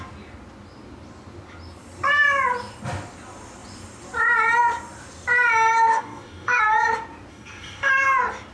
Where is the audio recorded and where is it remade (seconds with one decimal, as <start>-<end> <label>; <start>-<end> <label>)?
0.0-5.9 recorded; 5.9-6.6 remade; 6.6-7.3 recorded; 7.3-7.9 remade; 7.9-8.5 recorded